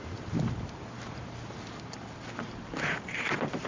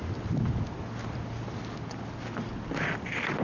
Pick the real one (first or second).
second